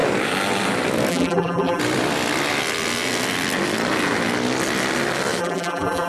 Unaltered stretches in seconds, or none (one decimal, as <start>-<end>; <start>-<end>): 0.0-1.1; 1.8-5.4